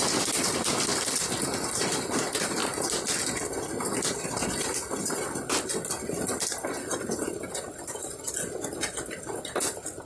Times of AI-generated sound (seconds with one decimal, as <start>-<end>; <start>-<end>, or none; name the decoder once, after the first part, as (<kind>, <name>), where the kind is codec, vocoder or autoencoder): none

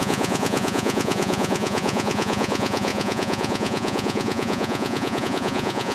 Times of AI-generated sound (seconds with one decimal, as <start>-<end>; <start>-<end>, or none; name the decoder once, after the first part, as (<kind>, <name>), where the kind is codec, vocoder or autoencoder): 0.0-5.9 (vocoder, Vocos)

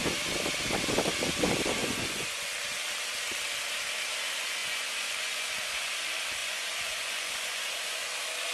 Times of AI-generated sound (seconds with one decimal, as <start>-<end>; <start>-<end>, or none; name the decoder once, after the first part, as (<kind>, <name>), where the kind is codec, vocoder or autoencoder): 1.8-2.5 (vocoder, Vocos); 4.6-5.9; 6.4-8.1

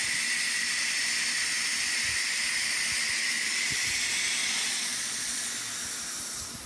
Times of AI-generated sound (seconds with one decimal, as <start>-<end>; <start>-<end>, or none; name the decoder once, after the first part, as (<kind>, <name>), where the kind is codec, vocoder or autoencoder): 4.4-5.5 (vocoder, Vocos)

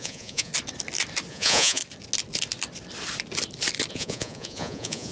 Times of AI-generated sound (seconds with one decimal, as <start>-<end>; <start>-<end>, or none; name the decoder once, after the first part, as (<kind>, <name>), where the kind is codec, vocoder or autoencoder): 0.0-0.5 (vocoder, Vocos); 1.3-1.8; 3.9-5.1

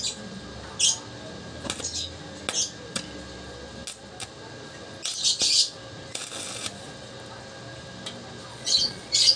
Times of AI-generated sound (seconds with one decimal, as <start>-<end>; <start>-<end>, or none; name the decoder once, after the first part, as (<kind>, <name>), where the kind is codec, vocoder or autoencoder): 8.5-9.4 (vocoder, Vocos)